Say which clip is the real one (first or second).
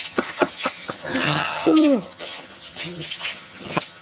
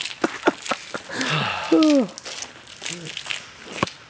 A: second